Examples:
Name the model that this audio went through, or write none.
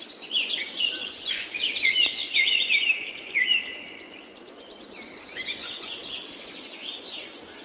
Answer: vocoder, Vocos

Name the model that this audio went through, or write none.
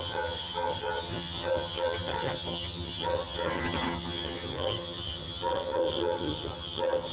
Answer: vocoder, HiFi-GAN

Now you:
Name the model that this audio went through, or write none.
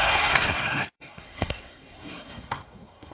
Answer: codec, SNAC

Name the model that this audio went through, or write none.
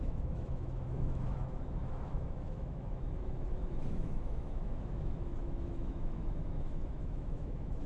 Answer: autoencoder, DAC-VAE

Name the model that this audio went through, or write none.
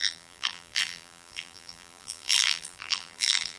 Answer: vocoder, BigVGAN v2